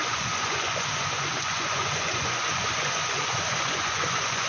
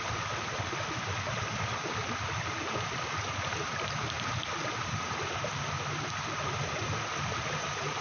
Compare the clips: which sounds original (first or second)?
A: second